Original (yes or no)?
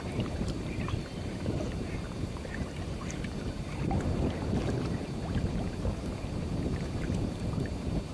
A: no